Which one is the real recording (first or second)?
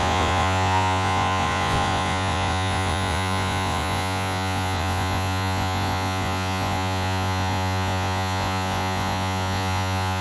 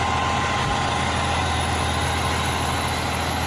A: second